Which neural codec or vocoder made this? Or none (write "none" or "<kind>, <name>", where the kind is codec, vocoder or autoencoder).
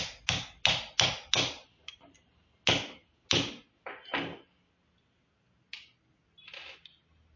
none